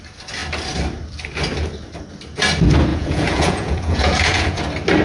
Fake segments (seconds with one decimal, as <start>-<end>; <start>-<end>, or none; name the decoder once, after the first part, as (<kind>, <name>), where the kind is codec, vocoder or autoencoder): 2.9-4.6 (vocoder, Vocos)